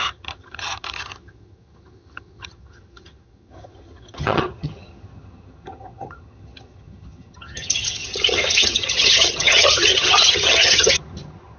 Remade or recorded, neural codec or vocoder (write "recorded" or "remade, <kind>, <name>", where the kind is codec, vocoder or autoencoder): remade, vocoder, HiFi-GAN